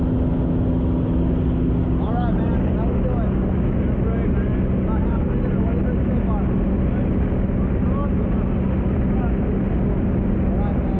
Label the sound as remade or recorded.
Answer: recorded